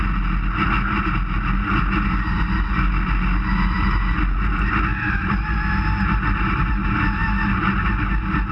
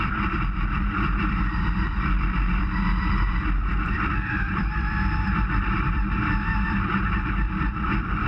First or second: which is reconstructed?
second